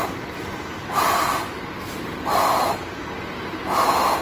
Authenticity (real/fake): real